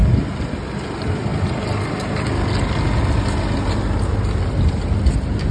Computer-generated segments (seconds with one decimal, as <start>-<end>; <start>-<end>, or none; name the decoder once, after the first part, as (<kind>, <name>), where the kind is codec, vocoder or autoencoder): none